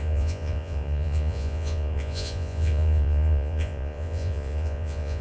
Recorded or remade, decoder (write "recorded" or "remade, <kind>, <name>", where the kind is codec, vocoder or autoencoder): remade, vocoder, Vocos